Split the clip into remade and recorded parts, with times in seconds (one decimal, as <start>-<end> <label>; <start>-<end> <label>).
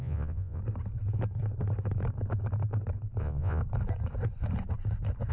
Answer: 0.0-0.6 remade; 0.6-3.2 recorded; 3.2-3.6 remade; 3.6-5.3 recorded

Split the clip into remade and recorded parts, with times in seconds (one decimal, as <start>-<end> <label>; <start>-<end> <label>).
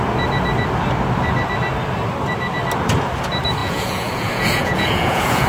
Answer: 0.0-3.6 recorded; 3.6-5.5 remade